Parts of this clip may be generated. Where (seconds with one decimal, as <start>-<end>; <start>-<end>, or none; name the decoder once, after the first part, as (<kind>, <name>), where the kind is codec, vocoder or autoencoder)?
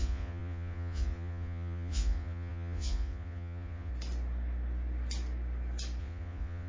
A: 0.0-3.9 (vocoder, Vocos); 6.0-6.7